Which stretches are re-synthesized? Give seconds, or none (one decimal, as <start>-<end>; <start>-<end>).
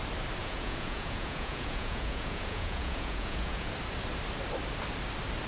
0.4-3.7